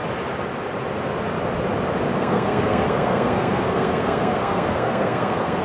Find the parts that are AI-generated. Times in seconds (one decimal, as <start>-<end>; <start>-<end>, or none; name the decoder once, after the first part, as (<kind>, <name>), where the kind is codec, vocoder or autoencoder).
2.1-5.6 (codec, SNAC)